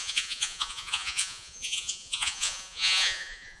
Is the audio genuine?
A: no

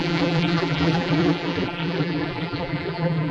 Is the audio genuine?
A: no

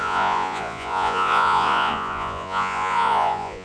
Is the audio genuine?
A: no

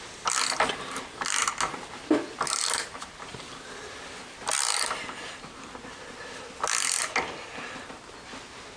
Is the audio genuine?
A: yes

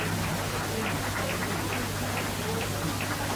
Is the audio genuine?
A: yes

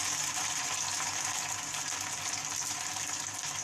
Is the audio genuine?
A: yes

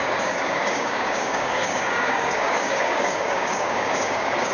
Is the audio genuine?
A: no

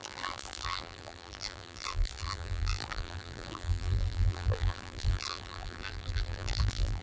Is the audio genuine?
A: no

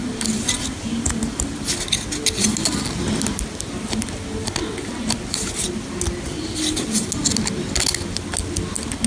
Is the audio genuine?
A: yes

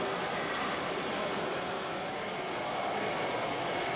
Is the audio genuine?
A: yes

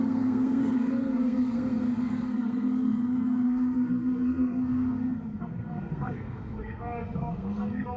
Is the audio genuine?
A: no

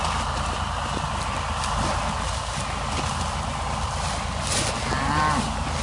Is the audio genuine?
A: yes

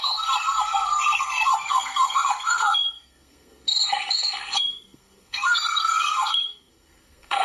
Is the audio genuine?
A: no